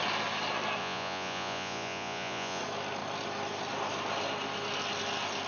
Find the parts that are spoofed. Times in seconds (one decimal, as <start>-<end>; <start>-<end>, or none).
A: 0.8-2.6